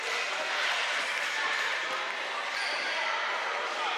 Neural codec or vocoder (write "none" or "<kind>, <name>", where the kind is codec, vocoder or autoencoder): none